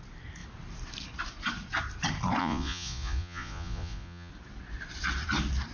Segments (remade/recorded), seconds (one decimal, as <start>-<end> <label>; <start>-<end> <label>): 0.0-2.4 recorded; 2.4-4.3 remade; 4.3-5.7 recorded